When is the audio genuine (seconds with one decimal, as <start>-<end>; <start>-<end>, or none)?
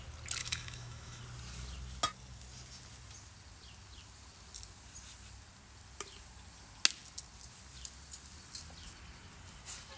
0.0-0.4; 1.2-10.0